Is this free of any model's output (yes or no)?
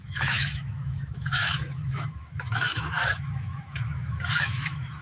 no